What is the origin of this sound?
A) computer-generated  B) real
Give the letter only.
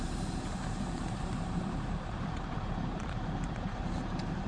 A